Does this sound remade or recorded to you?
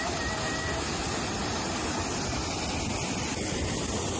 recorded